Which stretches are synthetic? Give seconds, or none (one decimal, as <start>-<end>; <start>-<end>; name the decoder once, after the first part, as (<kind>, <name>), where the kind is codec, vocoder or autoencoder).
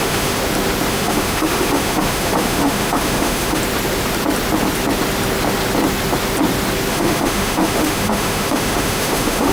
0.0-0.4 (autoencoder, DAC-VAE); 0.9-3.6; 6.9-9.5